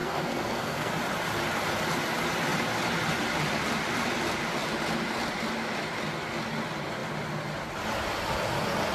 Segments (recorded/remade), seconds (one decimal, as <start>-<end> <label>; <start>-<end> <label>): 0.0-0.9 remade; 0.9-8.9 recorded